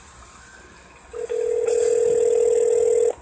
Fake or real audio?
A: real